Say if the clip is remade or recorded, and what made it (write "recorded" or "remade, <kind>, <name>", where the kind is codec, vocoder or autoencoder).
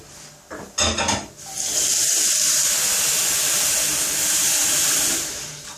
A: recorded